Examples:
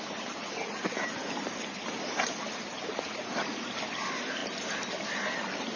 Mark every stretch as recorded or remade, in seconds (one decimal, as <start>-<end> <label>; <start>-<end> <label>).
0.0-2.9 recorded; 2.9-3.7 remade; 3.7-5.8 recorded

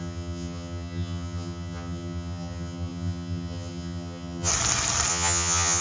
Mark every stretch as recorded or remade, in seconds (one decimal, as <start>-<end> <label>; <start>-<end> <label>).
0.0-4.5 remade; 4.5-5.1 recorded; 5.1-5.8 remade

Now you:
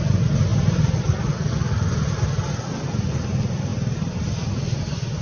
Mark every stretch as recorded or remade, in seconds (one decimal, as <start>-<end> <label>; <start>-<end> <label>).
0.0-5.2 recorded

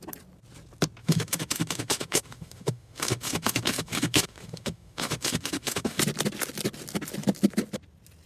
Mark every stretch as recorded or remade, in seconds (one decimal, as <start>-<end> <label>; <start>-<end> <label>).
0.0-1.0 recorded; 1.0-6.0 remade; 6.0-8.3 recorded

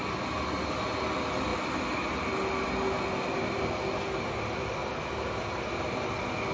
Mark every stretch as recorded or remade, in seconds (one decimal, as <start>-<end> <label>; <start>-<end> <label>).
0.0-6.5 recorded

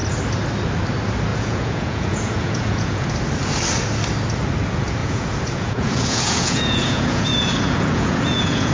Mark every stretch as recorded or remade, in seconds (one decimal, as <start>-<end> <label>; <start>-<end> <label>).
0.0-1.3 recorded; 1.3-3.1 remade; 3.1-5.0 recorded; 5.0-8.7 remade